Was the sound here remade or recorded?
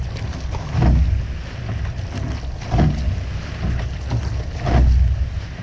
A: recorded